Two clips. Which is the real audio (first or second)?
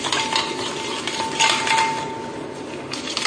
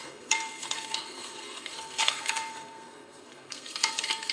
first